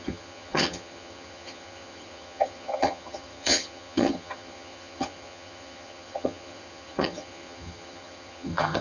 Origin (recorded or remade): remade